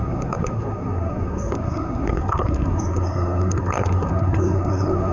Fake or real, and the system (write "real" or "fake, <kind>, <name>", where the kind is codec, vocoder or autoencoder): fake, codec, SNAC